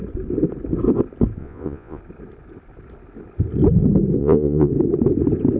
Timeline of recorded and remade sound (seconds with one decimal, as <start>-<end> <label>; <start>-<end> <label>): 0.0-1.4 recorded; 1.4-2.0 remade; 2.0-4.2 recorded; 4.2-4.7 remade; 4.7-5.6 recorded